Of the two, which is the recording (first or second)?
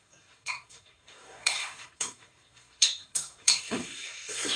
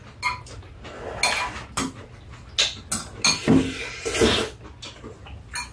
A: second